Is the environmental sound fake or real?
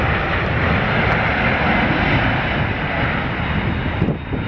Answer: real